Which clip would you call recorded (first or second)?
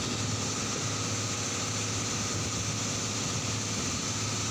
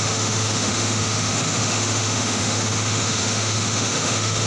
first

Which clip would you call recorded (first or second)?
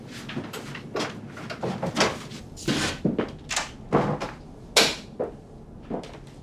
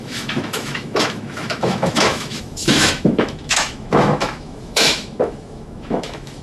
first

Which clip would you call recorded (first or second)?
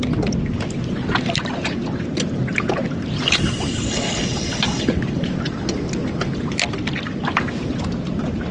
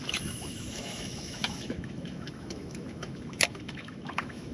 first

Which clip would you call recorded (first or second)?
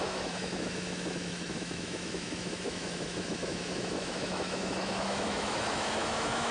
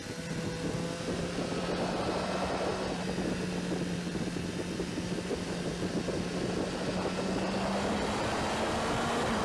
second